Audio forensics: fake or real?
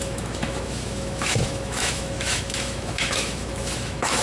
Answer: fake